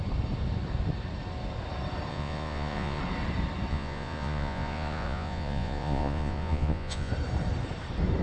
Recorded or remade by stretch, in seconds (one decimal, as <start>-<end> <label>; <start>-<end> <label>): 0.0-2.1 recorded; 2.1-3.0 remade; 3.0-3.7 recorded; 3.7-7.1 remade; 7.1-8.2 recorded